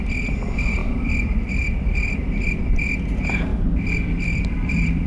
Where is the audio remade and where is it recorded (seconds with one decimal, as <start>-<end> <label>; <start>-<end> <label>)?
0.0-0.8 recorded; 0.8-2.8 remade; 2.8-3.5 recorded; 3.5-5.1 remade